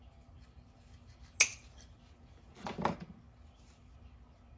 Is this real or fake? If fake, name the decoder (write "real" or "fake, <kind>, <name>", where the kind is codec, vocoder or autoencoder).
real